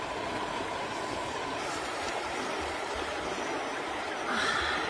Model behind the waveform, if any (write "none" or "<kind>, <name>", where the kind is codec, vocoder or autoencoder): vocoder, BigVGAN v2